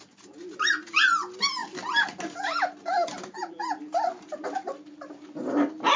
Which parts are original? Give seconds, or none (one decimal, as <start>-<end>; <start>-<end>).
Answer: 0.0-6.0